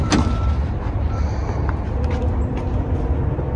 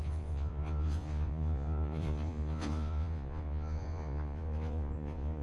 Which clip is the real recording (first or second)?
first